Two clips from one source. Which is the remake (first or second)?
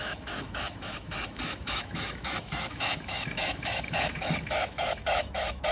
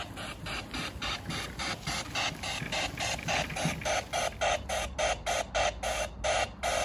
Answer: first